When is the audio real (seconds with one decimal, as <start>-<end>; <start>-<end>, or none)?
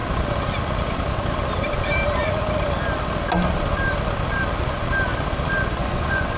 0.0-5.8